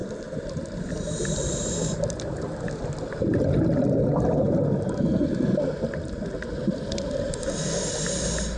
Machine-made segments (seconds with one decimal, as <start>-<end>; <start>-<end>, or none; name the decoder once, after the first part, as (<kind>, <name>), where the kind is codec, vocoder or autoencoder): 0.0-0.9 (vocoder, BigVGAN v2)

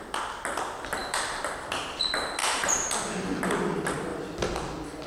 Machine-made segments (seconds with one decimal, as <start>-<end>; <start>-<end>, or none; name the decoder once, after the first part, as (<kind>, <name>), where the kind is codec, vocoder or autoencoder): 1.0-2.0 (vocoder, BigVGAN v2); 2.4-2.9

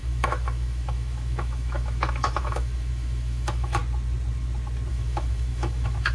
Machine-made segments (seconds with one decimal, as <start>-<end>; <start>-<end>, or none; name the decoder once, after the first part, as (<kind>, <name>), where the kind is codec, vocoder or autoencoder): 0.0-3.8 (autoencoder, DAC-VAE); 4.9-6.1

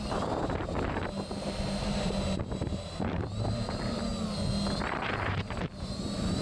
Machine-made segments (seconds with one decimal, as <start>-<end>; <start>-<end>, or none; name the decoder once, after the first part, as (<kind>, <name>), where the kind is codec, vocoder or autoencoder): 0.0-4.1 (vocoder, BigVGAN v2); 5.1-6.4